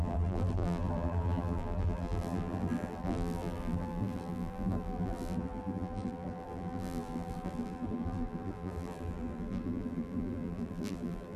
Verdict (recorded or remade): remade